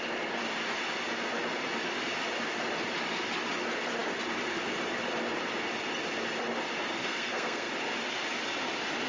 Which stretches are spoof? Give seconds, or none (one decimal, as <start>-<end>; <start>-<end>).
7.0-7.7